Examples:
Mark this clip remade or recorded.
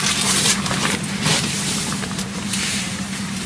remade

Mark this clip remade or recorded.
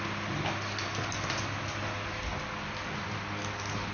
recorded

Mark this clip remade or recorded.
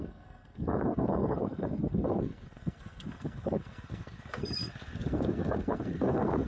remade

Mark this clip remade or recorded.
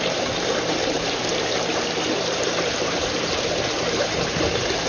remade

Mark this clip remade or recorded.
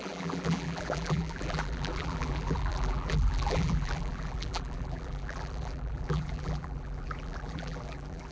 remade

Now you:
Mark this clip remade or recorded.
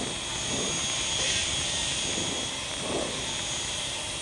recorded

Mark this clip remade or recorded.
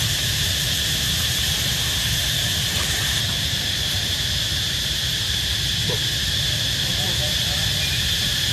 remade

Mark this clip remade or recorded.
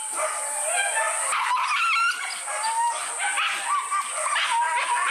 recorded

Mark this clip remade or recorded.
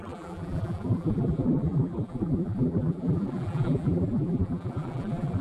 remade